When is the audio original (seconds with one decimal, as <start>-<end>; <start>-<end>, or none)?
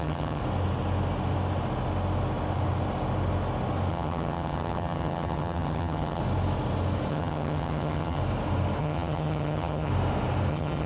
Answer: 0.4-3.9; 6.2-7.1; 8.2-8.8; 9.9-10.5